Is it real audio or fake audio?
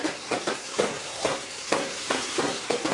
fake